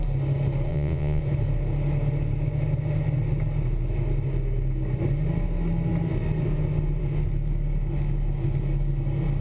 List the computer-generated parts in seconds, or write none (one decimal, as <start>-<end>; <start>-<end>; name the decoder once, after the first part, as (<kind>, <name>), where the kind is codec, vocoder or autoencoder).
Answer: 0.7-1.2 (vocoder, Vocos)